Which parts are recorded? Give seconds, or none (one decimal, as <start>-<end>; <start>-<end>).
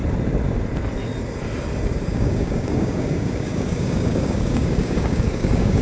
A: 0.0-2.1